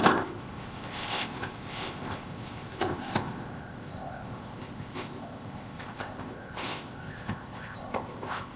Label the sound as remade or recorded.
remade